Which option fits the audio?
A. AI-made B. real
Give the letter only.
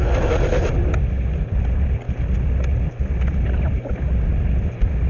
B